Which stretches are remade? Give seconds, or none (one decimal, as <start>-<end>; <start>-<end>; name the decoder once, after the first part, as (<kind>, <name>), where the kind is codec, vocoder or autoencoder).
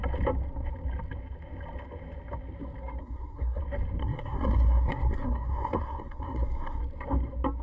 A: 3.0-3.6 (codec, SNAC); 4.0-6.8